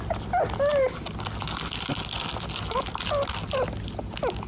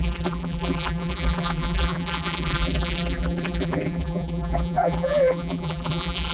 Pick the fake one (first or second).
second